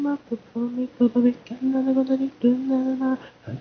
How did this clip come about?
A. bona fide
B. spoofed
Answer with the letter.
A